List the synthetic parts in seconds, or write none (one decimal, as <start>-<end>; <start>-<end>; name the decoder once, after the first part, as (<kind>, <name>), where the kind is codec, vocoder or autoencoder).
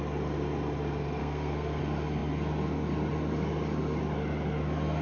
1.2-1.8 (codec, SNAC)